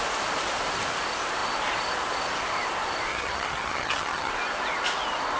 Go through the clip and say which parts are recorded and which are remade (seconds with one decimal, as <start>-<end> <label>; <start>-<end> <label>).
0.0-3.1 recorded; 3.1-4.3 remade; 4.3-5.4 recorded